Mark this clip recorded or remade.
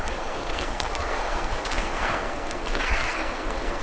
remade